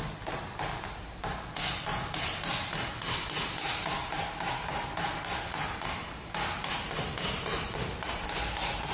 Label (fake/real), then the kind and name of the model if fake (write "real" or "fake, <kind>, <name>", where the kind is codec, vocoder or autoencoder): real